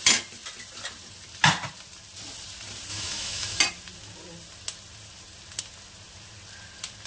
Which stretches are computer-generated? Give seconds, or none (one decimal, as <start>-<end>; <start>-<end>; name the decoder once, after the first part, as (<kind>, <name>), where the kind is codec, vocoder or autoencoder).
2.9-3.6 (autoencoder, DAC-VAE)

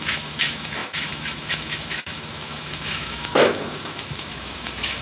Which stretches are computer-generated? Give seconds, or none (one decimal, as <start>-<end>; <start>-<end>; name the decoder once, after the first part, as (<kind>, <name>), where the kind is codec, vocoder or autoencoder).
0.0-5.0 (autoencoder, DAC-VAE)

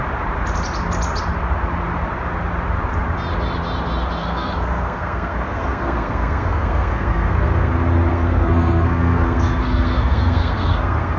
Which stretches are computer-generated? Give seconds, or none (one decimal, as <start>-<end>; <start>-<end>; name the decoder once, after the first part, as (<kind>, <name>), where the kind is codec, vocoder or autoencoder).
4.2-7.7 (codec, SNAC); 8.1-11.2